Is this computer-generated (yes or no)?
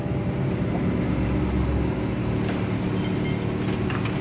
no